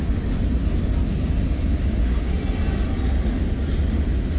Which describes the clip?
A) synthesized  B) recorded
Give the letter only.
B